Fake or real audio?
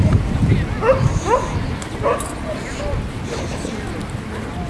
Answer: real